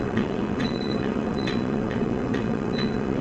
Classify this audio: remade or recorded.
remade